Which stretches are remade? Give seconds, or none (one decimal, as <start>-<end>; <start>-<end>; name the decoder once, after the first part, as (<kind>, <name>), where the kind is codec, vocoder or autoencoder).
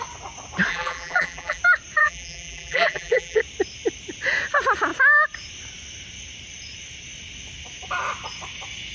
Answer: 0.7-1.6 (vocoder, BigVGAN v2); 2.0-3.4